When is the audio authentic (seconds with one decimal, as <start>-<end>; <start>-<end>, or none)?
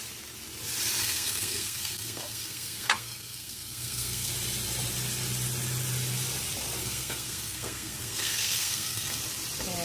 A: 0.0-1.0; 4.3-6.8; 9.2-9.8